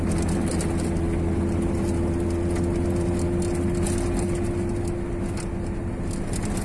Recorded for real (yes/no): yes